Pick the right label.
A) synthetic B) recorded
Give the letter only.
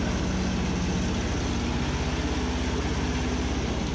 B